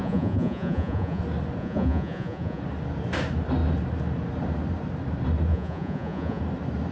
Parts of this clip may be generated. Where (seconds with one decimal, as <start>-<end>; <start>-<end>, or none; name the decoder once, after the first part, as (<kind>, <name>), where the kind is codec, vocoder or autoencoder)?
0.0-1.2 (vocoder, Vocos); 1.6-2.6; 5.5-6.4